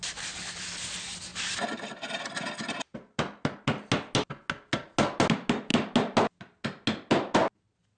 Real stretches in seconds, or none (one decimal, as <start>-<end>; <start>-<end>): 0.0-1.3; 1.9-8.0